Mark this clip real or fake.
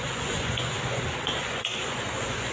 fake